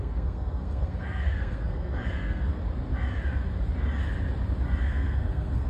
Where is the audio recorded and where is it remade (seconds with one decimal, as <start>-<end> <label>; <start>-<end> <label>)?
0.0-2.6 remade; 2.6-4.8 recorded; 4.8-5.7 remade